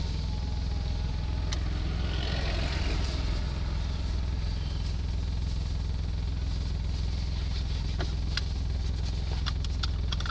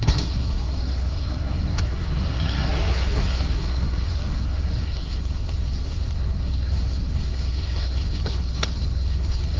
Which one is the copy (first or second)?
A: second